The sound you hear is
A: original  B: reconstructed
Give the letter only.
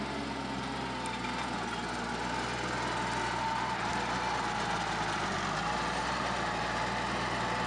A